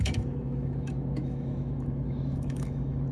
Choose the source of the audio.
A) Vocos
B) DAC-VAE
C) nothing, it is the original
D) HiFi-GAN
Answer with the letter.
B